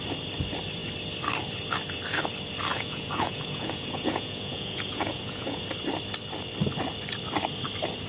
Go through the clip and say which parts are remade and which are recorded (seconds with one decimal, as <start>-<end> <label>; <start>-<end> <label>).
0.0-2.7 recorded; 2.7-5.7 remade; 5.7-8.1 recorded